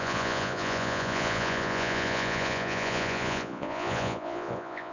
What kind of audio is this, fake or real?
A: fake